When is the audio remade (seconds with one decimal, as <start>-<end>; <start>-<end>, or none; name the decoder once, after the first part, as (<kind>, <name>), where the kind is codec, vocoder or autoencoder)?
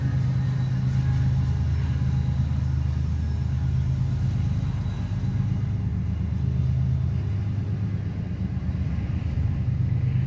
8.7-9.6 (vocoder, BigVGAN v2)